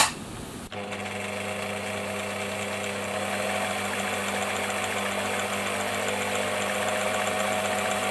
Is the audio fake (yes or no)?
no